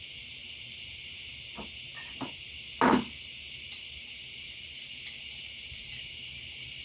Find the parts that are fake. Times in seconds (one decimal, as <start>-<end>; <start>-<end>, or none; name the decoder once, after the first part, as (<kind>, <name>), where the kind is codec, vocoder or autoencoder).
0.0-1.3 (vocoder, BigVGAN v2); 4.0-6.8